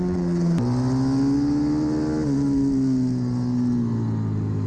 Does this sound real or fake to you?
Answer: real